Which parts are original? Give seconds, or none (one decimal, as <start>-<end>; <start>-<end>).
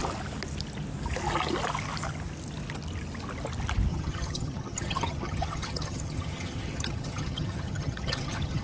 0.0-3.9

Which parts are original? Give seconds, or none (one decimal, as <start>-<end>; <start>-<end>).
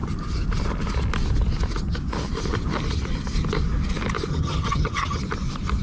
0.0-4.3; 5.2-5.8